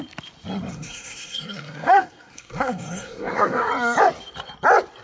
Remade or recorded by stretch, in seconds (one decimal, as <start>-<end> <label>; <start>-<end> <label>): 0.0-0.7 recorded; 0.7-3.7 remade; 3.7-5.0 recorded